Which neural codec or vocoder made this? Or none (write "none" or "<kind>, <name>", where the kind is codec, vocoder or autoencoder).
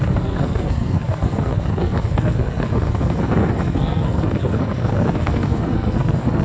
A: codec, SNAC